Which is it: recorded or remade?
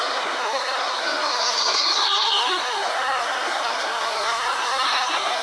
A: remade